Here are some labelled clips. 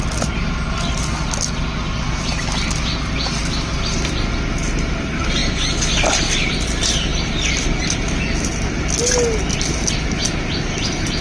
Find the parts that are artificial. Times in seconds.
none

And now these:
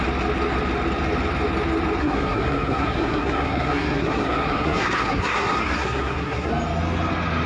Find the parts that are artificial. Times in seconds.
2.0-6.5 (codec, SNAC)

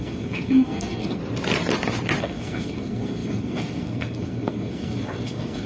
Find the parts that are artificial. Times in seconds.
0.0-1.2 (codec, SNAC); 2.2-5.7

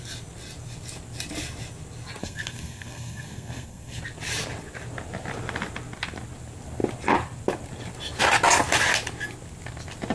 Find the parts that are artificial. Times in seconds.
2.2-4.0 (codec, SNAC)

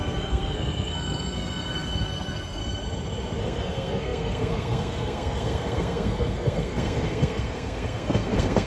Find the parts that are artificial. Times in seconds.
0.0-2.6 (codec, SNAC); 3.4-8.7